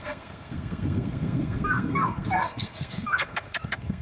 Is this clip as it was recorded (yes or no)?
no